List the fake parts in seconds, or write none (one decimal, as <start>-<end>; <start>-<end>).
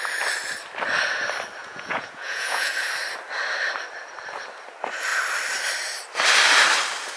1.6-2.7